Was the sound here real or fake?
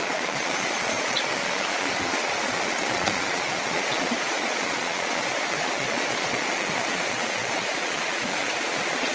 fake